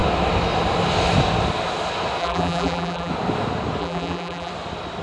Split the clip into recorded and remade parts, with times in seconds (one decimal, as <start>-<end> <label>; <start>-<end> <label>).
0.0-2.2 recorded; 2.2-3.1 remade; 3.1-3.8 recorded; 3.8-4.5 remade; 4.5-5.0 recorded